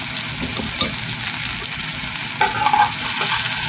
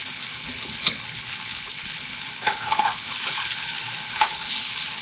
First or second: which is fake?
second